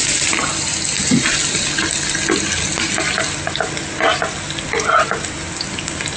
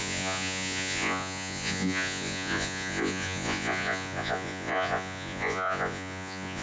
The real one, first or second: first